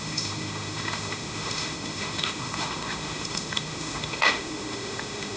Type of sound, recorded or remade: remade